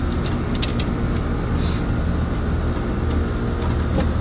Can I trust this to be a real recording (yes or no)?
yes